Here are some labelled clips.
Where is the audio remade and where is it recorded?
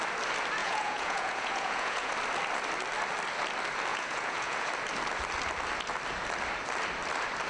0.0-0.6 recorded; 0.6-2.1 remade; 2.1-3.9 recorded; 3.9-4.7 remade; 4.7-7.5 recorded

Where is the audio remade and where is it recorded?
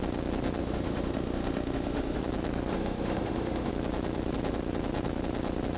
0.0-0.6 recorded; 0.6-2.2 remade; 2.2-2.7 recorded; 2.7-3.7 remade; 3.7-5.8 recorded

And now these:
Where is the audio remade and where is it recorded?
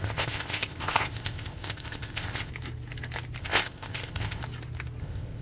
0.0-2.5 remade; 2.5-3.4 recorded; 3.4-4.4 remade; 4.4-5.0 recorded; 5.0-5.4 remade